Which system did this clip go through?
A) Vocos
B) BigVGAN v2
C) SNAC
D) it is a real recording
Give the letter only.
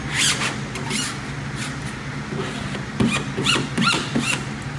D